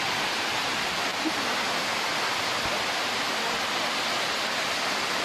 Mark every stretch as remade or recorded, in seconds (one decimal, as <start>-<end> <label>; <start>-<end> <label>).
0.0-5.2 recorded